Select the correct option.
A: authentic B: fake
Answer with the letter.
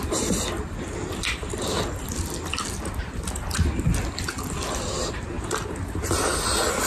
A